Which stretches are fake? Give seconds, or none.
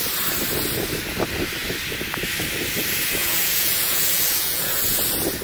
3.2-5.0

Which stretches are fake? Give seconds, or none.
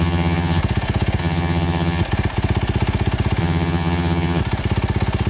0.0-0.6; 1.2-2.0; 3.4-4.4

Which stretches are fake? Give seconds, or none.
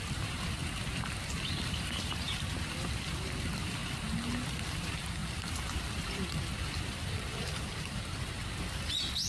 0.0-0.6; 1.2-3.8; 4.7-5.2; 5.8-9.3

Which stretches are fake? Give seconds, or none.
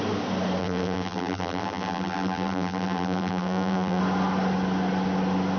0.6-4.0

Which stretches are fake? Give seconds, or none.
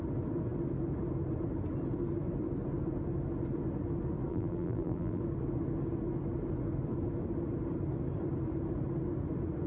4.3-5.2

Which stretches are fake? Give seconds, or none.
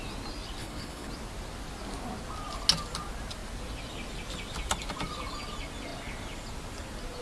0.6-1.1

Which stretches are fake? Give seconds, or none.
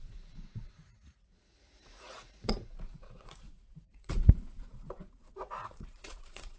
0.0-6.6